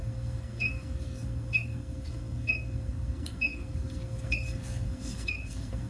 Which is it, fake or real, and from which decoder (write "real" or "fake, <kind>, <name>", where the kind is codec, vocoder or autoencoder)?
fake, codec, SNAC